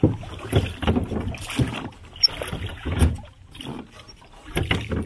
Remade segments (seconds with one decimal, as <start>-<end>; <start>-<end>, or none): 2.7-3.6